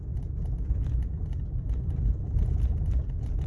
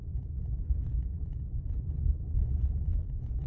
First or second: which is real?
first